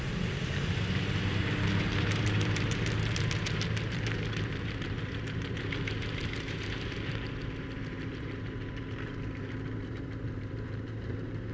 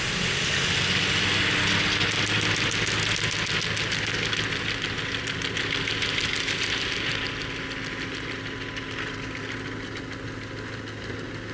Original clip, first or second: second